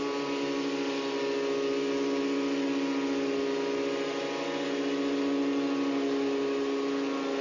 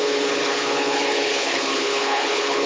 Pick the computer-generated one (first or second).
second